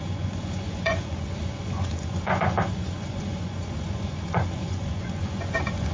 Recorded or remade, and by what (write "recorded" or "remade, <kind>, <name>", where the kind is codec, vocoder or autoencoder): remade, vocoder, Vocos